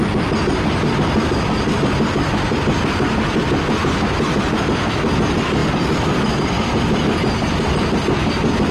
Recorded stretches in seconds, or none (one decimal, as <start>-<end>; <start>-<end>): 0.0-8.7